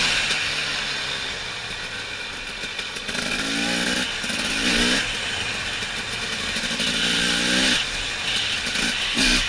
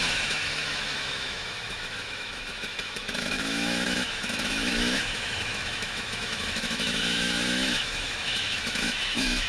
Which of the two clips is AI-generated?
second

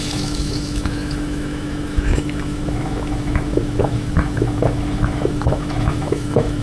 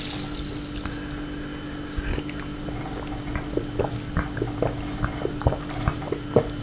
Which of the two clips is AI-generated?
first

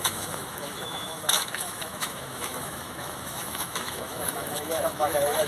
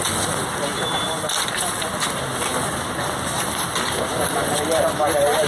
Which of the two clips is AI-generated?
first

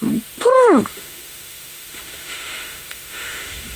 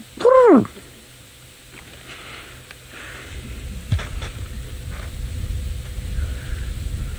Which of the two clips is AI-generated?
first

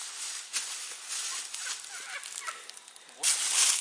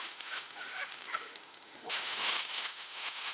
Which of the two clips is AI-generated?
second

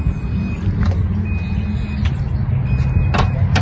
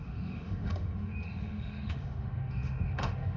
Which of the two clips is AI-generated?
second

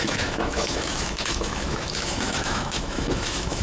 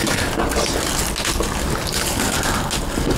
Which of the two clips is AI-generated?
first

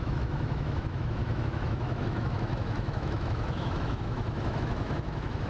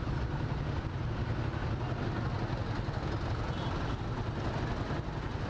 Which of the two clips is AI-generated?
first